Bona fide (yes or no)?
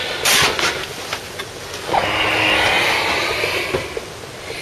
yes